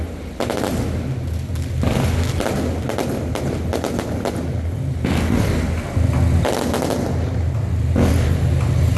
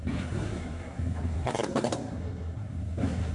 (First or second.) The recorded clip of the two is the first